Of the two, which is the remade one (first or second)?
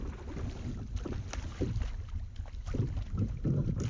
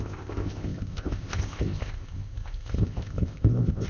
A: second